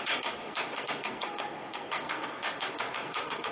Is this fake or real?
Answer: fake